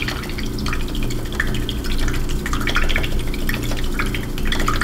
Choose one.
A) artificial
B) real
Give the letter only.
B